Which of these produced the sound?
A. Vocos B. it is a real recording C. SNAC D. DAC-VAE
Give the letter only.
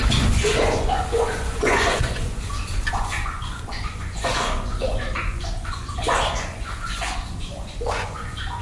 A